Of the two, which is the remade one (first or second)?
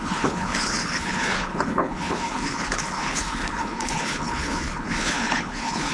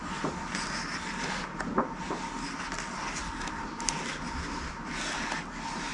first